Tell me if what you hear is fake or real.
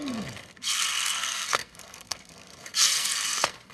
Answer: fake